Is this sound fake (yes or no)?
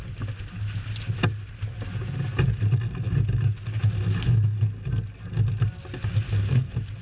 no